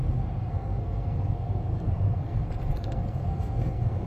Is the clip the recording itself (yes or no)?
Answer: no